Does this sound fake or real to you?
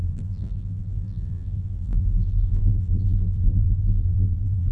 fake